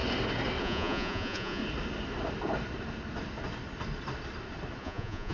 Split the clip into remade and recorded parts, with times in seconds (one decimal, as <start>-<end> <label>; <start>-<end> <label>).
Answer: 0.0-0.6 recorded; 0.6-1.6 remade; 1.6-4.8 recorded; 4.8-5.3 remade